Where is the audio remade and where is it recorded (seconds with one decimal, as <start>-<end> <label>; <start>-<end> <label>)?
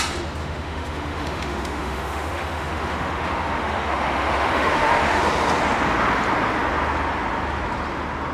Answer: 0.0-0.4 recorded; 0.4-5.2 remade; 5.2-8.3 recorded